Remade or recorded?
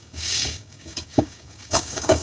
remade